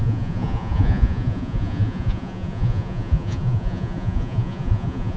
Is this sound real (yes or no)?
no